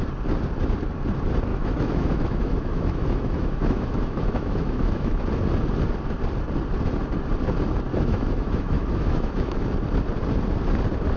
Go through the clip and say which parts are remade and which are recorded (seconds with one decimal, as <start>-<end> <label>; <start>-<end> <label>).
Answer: 0.0-1.5 recorded; 1.5-5.2 remade; 5.2-7.9 recorded; 7.9-9.6 remade; 9.6-11.2 recorded